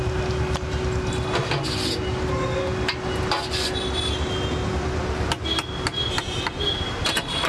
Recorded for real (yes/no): yes